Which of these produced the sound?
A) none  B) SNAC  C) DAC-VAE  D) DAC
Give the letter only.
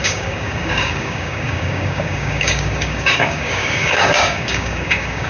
D